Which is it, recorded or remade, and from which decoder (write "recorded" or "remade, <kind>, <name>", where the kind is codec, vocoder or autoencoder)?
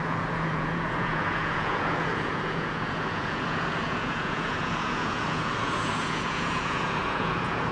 remade, vocoder, Vocos